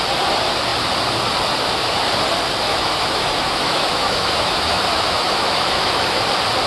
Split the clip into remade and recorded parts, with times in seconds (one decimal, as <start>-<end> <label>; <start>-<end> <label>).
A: 0.0-2.7 recorded; 2.7-6.2 remade; 6.2-6.7 recorded